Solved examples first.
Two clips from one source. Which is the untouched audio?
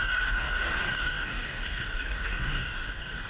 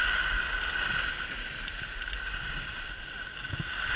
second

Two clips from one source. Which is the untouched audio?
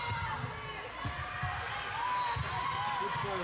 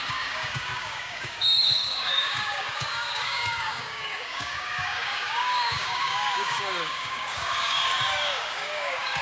first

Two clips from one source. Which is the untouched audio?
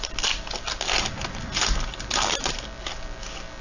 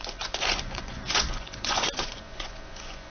first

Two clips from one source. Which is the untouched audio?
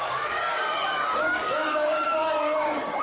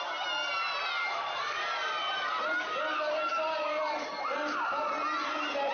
second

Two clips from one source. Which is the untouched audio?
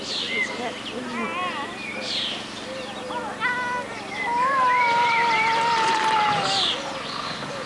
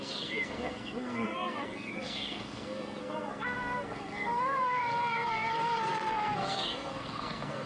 first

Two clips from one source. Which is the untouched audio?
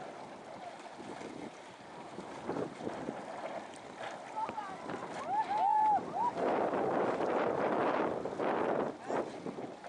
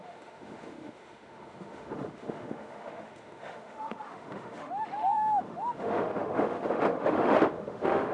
first